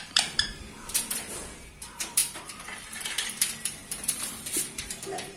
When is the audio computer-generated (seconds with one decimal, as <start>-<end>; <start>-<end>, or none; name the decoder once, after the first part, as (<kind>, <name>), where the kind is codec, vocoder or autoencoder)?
0.0-5.4 (vocoder, BigVGAN v2)